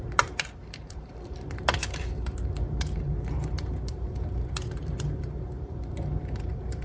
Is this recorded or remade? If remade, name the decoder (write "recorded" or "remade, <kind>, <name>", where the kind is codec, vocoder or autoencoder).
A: remade, vocoder, BigVGAN v2